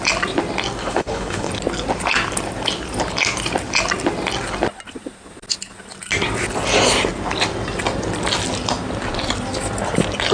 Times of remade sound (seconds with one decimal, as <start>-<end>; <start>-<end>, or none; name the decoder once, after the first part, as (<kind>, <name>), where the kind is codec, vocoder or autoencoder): 0.8-1.5 (codec, HILCodec)